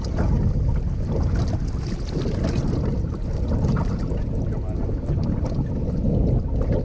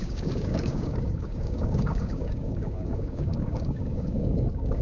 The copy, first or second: second